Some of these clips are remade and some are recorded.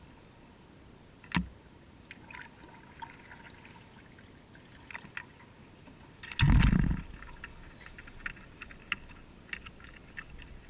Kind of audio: recorded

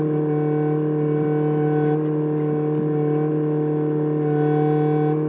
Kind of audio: recorded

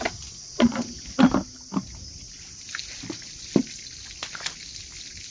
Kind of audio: recorded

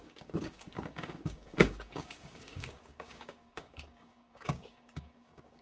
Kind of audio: remade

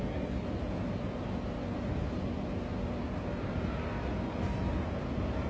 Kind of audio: recorded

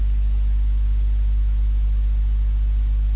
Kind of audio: recorded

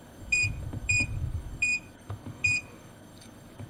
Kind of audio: remade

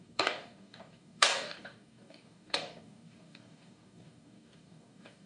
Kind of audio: remade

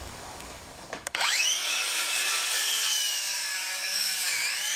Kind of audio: remade